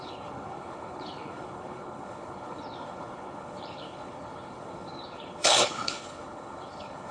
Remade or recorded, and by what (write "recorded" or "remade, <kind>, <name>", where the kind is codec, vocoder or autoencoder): remade, codec, HILCodec